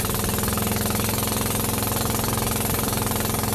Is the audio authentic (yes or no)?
yes